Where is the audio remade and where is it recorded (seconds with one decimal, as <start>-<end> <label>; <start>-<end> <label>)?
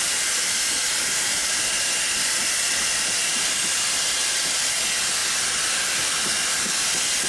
0.0-7.3 recorded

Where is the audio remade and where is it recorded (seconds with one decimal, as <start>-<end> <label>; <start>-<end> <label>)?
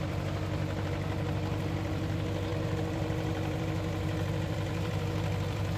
0.0-5.8 remade